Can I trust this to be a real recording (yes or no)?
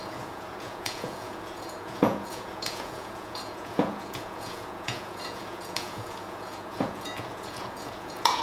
no